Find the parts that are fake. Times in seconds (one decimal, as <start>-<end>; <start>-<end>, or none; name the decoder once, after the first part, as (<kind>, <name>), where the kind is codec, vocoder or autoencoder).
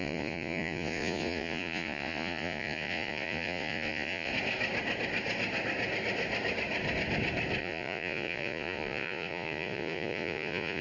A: 0.0-4.3 (vocoder, Vocos); 7.6-10.8